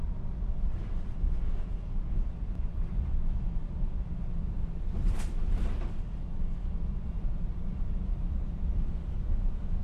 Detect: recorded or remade recorded